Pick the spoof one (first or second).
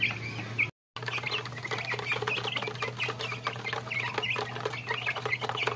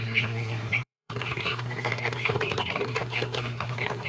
second